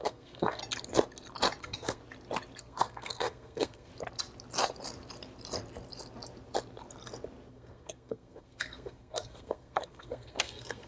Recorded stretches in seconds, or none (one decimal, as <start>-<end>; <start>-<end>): 0.6-1.6; 2.0-2.6; 3.9-7.5